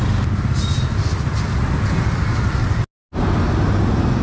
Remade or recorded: recorded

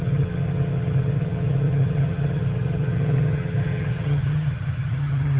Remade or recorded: remade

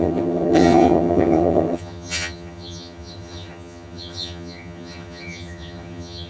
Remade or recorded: remade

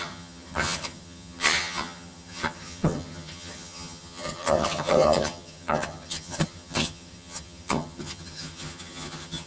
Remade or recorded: remade